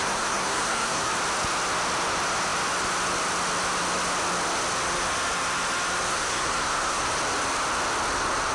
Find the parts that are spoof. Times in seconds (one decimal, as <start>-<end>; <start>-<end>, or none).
0.0-1.1; 6.1-7.0

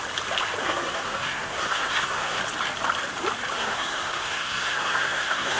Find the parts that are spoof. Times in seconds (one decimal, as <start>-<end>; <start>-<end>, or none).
0.6-2.4; 3.5-5.6

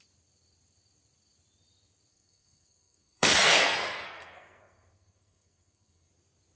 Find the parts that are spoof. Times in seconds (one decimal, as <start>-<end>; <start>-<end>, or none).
2.1-6.1